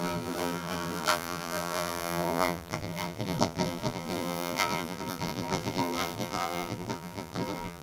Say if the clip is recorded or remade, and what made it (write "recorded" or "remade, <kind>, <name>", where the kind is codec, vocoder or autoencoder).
remade, vocoder, BigVGAN v2